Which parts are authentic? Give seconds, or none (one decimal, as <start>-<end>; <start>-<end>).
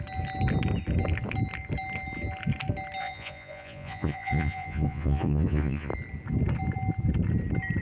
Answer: 0.0-3.0; 5.9-7.8